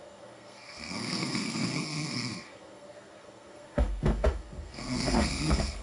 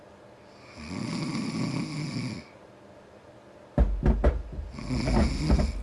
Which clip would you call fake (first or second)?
first